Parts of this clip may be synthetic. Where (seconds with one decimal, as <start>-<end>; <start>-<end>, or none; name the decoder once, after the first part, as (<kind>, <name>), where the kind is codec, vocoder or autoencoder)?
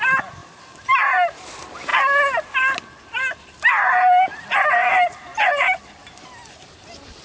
none